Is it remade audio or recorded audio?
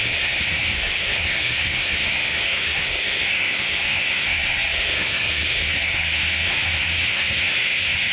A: remade